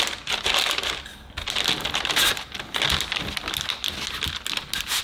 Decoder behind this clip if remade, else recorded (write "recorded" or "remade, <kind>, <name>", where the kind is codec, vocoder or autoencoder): recorded